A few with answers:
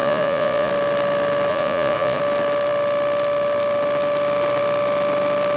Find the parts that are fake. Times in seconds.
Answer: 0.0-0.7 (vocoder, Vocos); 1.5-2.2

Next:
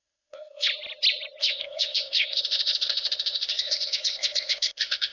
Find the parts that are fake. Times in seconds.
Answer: 0.0-0.7 (codec, ZipCodec); 1.4-5.1

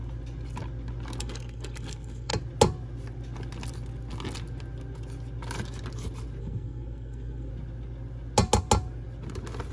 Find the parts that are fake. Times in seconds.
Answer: 1.2-2.3 (codec, SNAC); 6.4-7.5

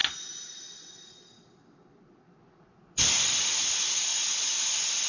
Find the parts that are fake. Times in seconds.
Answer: none

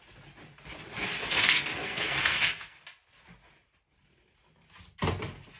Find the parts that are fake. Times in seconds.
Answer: 1.2-2.8 (codec, SNAC)

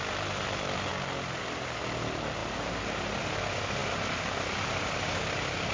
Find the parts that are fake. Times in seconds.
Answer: none